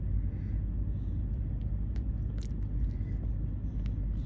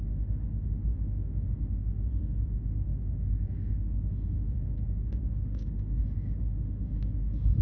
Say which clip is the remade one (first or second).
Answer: second